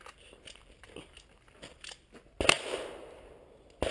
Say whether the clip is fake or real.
real